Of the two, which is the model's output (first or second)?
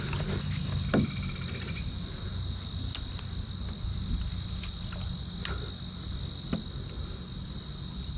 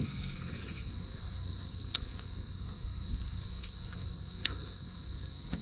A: second